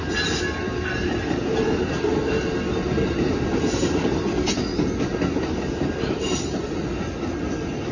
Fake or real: real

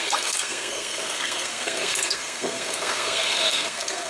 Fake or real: fake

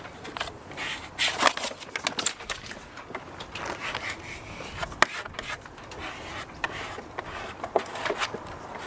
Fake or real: real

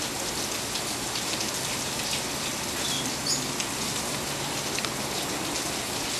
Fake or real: real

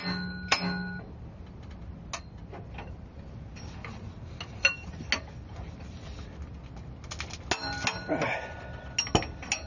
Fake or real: real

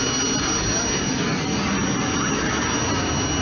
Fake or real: real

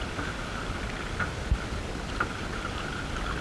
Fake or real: real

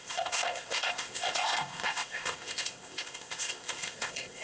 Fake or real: fake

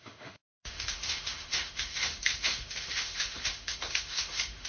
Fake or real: fake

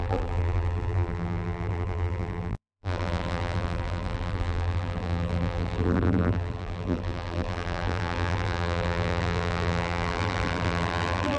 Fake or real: fake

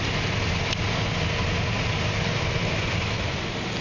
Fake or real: real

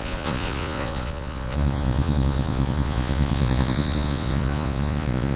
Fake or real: fake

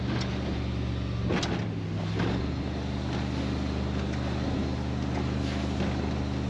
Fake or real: real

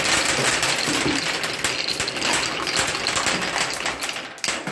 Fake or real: real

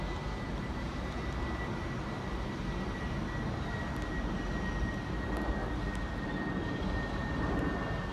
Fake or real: real